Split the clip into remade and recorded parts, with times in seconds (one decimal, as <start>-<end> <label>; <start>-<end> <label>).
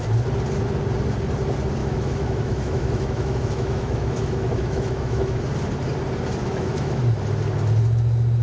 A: 0.0-1.8 recorded; 1.8-5.4 remade; 5.4-6.4 recorded; 6.4-7.0 remade; 7.0-8.4 recorded